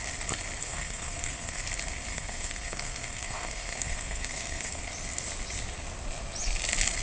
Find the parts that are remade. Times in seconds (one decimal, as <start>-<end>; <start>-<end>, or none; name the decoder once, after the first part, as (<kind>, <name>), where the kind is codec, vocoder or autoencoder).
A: 0.6-1.6 (codec, SNAC); 2.1-4.8